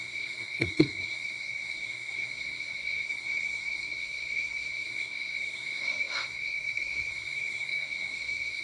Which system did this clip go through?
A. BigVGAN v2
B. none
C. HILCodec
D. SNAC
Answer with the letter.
D